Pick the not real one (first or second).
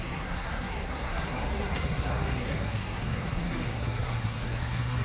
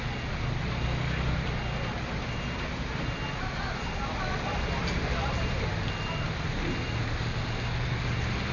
first